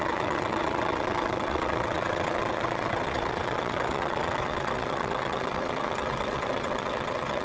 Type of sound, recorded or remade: remade